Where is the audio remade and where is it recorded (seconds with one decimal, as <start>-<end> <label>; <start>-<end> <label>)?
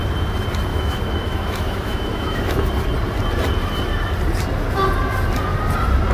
0.0-0.7 recorded; 0.7-2.7 remade; 2.7-6.1 recorded